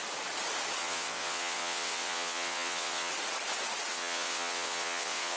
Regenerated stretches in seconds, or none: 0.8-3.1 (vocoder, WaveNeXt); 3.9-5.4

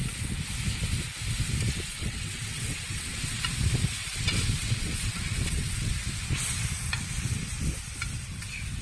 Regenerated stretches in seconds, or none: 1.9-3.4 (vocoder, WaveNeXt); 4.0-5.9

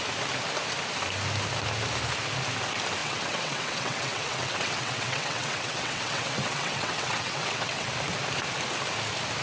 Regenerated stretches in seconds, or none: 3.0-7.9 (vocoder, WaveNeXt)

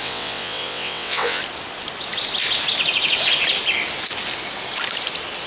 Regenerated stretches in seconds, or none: 0.0-1.4 (vocoder, WaveNeXt)